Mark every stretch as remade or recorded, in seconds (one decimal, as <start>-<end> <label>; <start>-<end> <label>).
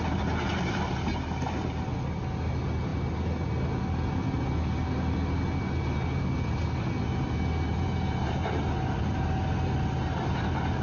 0.0-10.8 recorded